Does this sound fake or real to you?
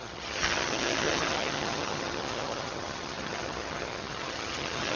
fake